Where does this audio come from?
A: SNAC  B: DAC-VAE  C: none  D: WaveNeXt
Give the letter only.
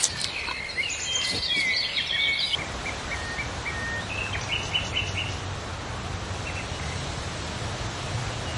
C